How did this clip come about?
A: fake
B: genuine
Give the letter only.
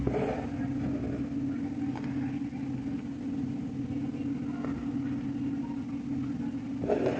B